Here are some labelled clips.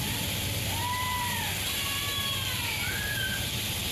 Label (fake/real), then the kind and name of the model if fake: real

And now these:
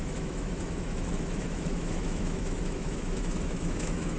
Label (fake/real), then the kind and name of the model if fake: fake, autoencoder, DAC-VAE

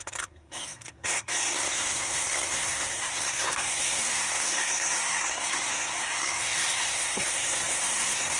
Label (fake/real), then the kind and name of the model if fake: fake, codec, SNAC